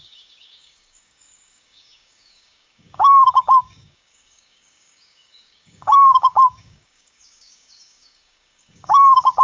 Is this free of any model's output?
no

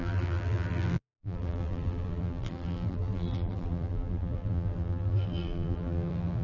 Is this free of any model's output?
no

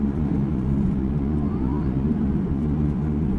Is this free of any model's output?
no